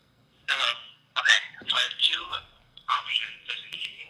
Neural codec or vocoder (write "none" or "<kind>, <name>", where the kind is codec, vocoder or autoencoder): codec, SNAC